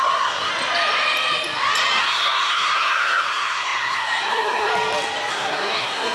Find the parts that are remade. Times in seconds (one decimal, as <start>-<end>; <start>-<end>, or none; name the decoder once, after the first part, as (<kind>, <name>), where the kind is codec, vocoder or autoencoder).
0.0-0.5 (codec, SNAC); 2.0-4.7; 5.3-6.1